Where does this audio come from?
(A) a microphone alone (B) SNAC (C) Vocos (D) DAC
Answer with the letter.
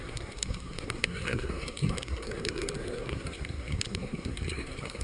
B